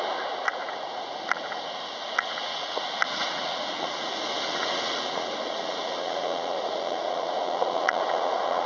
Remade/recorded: remade